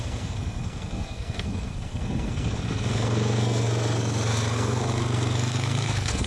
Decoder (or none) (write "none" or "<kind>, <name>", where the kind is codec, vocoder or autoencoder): codec, SNAC